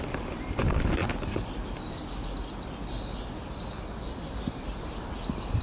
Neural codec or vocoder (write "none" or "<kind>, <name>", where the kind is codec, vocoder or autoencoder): none